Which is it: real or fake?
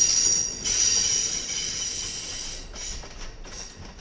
real